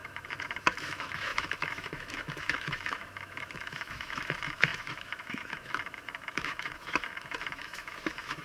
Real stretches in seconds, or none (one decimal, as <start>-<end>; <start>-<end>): none